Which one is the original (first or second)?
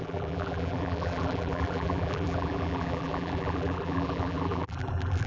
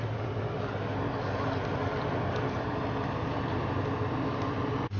second